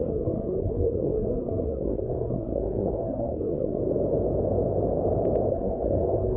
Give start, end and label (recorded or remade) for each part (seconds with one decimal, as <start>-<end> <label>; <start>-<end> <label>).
0.0-3.8 remade; 3.8-5.5 recorded; 5.5-6.4 remade